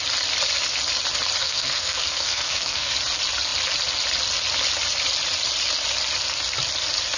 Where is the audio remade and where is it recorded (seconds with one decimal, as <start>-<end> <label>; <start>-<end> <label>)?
0.0-1.4 recorded; 1.4-2.9 remade; 2.9-7.2 recorded